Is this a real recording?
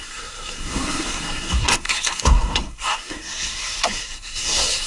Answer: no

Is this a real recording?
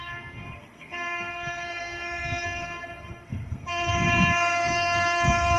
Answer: no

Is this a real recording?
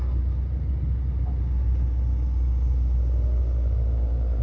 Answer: yes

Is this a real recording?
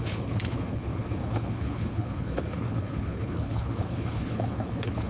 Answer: no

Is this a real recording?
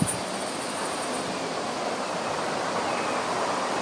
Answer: yes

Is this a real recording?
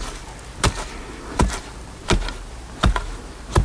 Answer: yes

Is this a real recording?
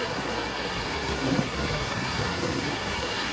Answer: no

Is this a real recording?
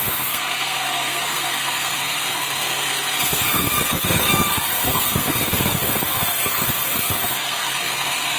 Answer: no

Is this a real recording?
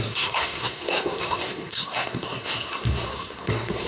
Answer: no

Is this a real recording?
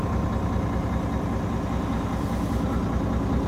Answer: yes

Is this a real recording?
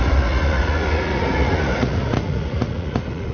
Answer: no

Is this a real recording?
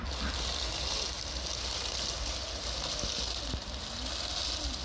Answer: yes